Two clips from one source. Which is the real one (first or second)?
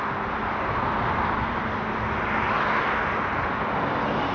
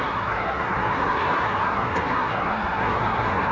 first